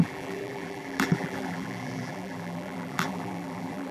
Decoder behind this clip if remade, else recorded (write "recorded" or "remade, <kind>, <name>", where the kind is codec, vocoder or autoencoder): remade, vocoder, BigVGAN v2